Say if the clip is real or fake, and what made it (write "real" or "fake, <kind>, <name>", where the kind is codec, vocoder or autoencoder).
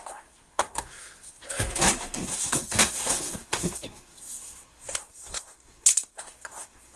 fake, codec, SNAC